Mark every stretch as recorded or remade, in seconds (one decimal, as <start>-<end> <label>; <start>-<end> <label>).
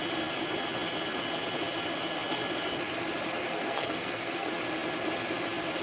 0.0-3.4 recorded; 3.4-4.5 remade; 4.5-5.8 recorded